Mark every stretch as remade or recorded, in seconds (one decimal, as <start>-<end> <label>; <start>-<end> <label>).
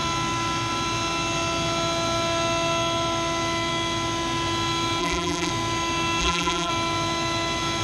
0.0-5.0 recorded; 5.0-5.5 remade; 5.5-6.2 recorded; 6.2-6.7 remade; 6.7-7.8 recorded